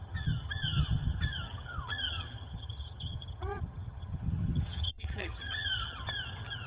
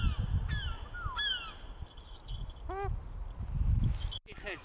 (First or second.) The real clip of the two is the second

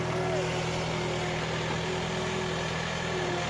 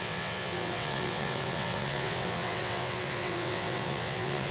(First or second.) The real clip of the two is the first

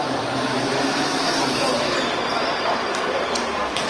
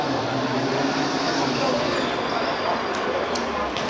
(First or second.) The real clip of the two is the second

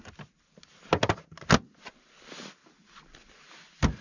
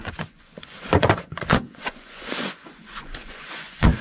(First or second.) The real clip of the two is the first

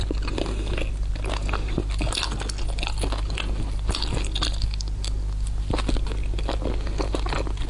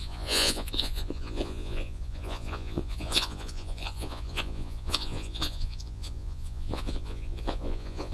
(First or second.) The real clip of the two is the first